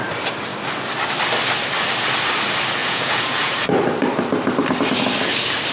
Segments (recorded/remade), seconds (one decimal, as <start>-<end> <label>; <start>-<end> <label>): 0.0-2.8 recorded; 2.8-3.5 remade; 3.5-5.7 recorded